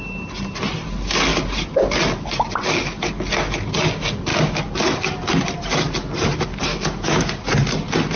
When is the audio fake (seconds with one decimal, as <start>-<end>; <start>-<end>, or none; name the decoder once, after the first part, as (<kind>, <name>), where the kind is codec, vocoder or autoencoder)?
6.7-7.3 (autoencoder, DAC-VAE)